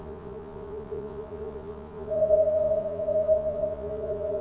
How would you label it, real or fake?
fake